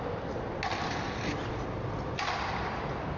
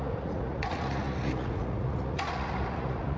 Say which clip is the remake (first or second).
second